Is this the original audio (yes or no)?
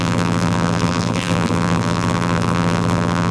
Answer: no